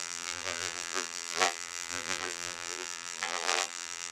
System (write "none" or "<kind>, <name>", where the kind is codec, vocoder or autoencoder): vocoder, BigVGAN v2